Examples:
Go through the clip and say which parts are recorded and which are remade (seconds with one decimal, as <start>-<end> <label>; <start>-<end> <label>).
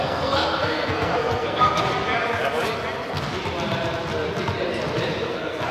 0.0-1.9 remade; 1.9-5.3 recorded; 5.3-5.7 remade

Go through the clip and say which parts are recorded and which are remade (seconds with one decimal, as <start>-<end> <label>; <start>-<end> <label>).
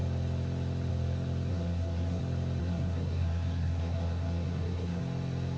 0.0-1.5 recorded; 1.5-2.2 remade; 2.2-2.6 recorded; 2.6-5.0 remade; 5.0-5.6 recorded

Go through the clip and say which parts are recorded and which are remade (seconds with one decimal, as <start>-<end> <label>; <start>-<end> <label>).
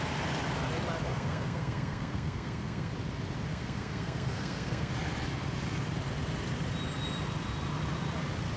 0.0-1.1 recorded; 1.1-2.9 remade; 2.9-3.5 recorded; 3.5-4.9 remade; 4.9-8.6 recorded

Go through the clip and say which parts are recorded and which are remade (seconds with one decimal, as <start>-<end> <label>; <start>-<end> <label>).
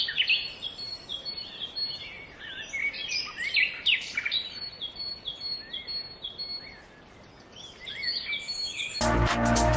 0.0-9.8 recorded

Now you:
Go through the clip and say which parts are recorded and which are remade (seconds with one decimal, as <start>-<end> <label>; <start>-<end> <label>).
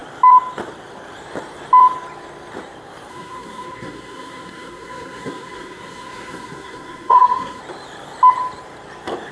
0.0-3.1 recorded; 3.1-7.6 remade; 7.6-9.3 recorded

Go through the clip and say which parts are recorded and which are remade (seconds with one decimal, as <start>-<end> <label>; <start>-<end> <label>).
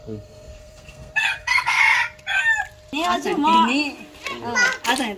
0.0-1.8 remade; 1.8-5.2 recorded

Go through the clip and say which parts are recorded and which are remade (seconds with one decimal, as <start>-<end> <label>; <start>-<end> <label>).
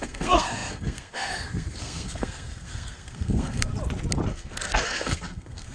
0.0-3.7 remade; 3.7-4.3 recorded; 4.3-5.7 remade